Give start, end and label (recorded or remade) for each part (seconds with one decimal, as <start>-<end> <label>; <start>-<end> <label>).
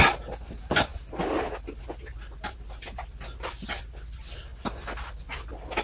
0.0-5.8 recorded